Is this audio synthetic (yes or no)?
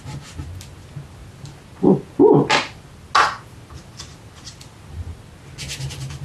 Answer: no